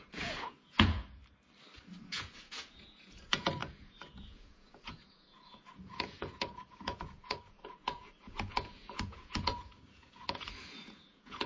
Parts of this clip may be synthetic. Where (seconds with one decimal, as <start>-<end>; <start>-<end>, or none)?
0.0-1.2; 2.0-11.5